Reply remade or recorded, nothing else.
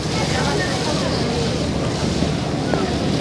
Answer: recorded